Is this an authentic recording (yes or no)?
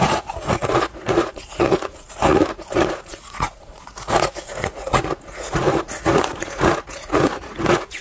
no